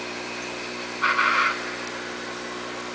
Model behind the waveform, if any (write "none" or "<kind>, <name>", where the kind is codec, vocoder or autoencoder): none